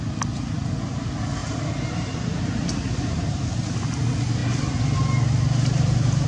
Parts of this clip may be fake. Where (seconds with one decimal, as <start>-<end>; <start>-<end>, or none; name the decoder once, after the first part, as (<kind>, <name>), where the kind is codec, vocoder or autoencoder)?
1.4-2.7 (vocoder, BigVGAN v2)